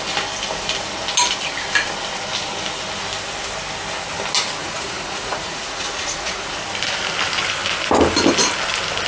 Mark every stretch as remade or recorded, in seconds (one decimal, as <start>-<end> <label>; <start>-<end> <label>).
0.0-4.6 recorded; 4.6-6.4 remade; 6.4-9.1 recorded